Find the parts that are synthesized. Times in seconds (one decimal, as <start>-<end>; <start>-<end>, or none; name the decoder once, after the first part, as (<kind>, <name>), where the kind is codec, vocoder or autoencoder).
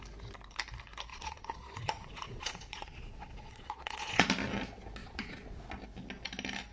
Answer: 1.1-4.3 (vocoder, Vocos); 5.0-5.6